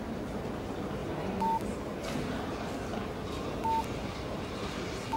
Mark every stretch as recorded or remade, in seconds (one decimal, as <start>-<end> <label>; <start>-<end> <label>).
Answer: 0.0-5.2 recorded